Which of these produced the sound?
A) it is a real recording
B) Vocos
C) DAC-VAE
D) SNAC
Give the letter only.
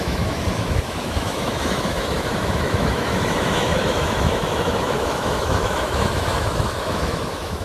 C